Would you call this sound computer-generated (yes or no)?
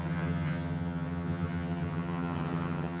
yes